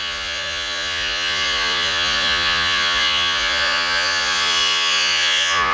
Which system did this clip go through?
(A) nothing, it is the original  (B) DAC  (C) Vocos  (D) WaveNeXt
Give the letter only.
C